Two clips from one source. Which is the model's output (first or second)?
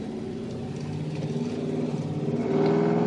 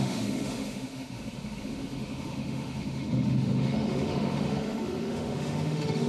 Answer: second